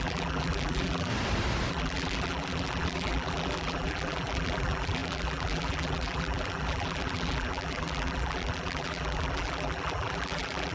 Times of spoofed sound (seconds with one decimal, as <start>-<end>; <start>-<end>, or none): 0.0-1.1; 1.7-10.7